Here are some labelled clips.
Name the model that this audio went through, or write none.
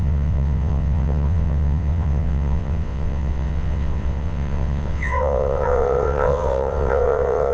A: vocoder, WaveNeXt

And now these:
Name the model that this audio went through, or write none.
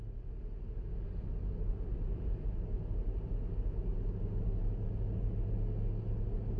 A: none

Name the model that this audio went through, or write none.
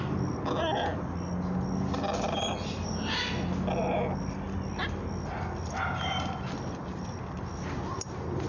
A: none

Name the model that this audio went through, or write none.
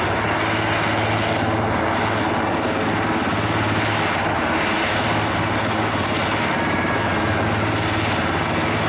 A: none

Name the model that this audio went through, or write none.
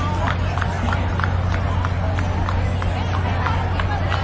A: none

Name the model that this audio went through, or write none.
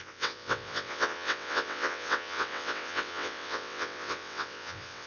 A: vocoder, WaveNeXt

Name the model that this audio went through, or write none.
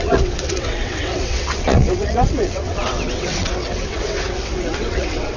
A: vocoder, WaveNeXt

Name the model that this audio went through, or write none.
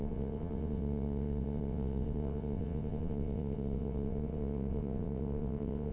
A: vocoder, WaveNeXt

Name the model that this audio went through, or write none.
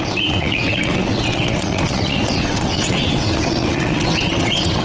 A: vocoder, WaveNeXt